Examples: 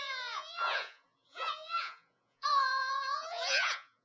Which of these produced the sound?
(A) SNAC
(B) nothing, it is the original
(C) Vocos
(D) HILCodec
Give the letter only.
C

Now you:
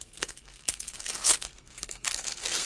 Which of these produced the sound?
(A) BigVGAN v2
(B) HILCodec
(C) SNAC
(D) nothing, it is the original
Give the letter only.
C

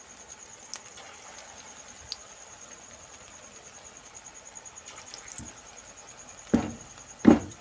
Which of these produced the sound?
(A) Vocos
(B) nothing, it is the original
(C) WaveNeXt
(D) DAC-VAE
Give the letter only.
B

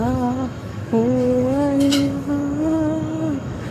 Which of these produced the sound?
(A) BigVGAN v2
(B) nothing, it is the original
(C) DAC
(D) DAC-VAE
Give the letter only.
D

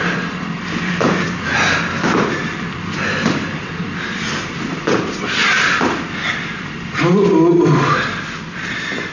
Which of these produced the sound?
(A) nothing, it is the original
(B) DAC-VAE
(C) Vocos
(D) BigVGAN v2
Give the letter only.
D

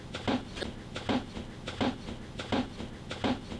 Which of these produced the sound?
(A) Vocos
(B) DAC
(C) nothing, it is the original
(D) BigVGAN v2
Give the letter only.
C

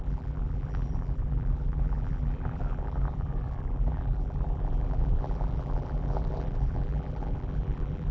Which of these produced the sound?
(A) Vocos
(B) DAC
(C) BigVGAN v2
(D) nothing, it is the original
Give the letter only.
C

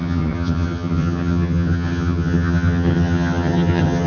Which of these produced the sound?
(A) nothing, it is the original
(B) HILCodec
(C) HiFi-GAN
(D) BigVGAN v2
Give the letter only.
C